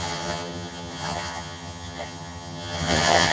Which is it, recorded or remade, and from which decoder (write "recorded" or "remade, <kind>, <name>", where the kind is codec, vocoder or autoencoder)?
remade, vocoder, HiFi-GAN